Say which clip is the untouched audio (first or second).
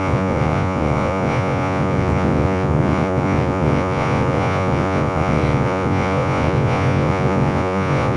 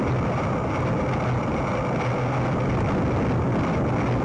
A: second